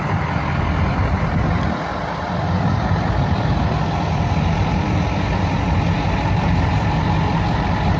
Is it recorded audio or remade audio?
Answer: recorded